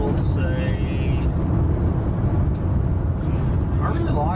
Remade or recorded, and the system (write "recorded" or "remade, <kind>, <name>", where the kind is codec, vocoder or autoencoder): recorded